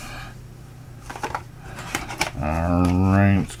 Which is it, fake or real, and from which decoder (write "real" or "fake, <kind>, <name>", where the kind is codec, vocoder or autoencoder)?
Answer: fake, vocoder, BigVGAN v2